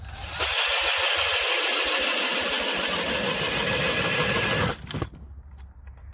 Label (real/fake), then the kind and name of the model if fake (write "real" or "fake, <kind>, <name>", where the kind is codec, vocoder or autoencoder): real